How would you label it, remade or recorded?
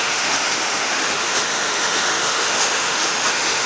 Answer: remade